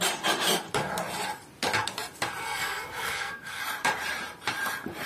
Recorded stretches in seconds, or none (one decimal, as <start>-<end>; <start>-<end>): 0.0-2.4; 3.6-5.1